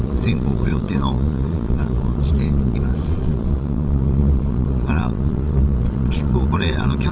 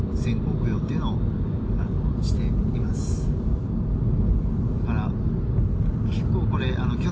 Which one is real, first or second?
second